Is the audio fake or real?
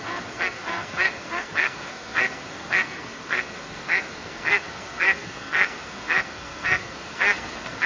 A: fake